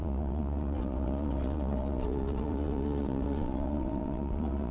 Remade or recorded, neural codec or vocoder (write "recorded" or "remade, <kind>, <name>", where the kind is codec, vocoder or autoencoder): remade, vocoder, WaveNeXt